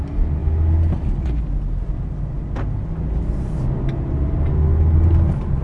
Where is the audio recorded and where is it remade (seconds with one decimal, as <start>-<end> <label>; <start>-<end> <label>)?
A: 0.0-5.6 recorded